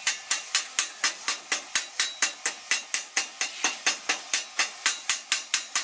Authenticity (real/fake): real